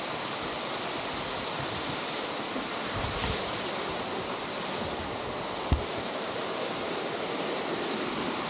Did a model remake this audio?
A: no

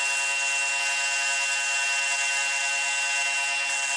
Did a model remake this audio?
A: no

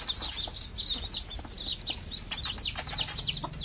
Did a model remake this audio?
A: no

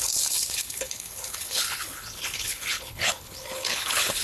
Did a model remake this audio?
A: yes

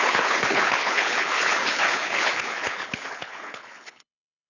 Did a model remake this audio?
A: yes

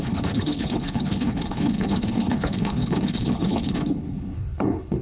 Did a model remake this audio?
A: yes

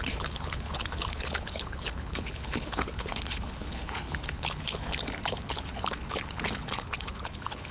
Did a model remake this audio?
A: yes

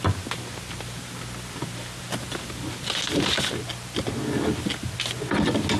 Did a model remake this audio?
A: no